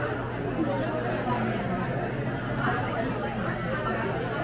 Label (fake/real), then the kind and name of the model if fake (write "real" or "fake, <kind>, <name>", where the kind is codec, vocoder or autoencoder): real